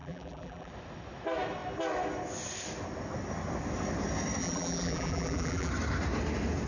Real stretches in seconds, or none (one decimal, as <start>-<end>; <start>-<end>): 0.7-4.4; 5.7-6.7

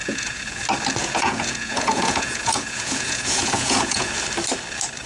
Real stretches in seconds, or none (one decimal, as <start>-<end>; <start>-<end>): 0.6-1.0; 4.1-5.1

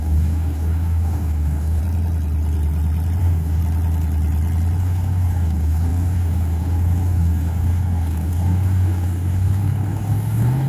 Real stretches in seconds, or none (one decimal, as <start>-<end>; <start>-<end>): 1.8-3.2; 3.6-4.8

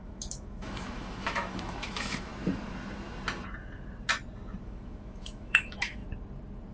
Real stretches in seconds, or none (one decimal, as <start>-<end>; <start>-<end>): 2.3-4.6; 6.0-6.7